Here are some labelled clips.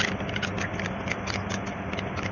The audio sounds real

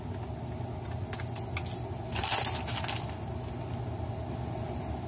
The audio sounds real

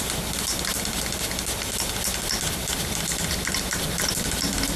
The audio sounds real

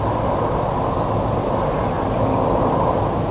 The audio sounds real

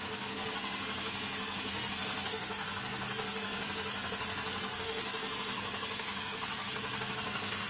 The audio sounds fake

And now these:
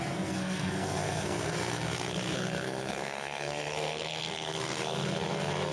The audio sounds fake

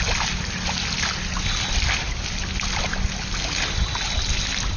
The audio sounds real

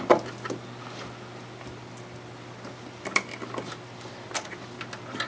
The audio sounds real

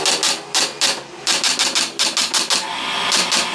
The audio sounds real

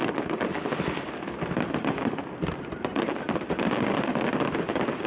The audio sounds fake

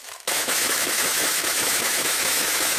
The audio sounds fake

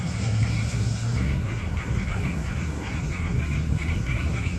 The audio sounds fake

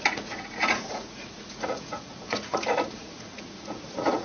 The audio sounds fake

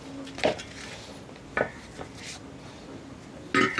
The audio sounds real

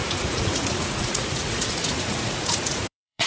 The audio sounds fake